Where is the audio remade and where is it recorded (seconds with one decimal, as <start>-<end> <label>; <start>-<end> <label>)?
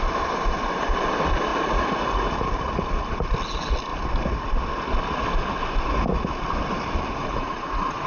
0.0-1.5 recorded; 1.5-2.3 remade; 2.3-7.1 recorded; 7.1-8.1 remade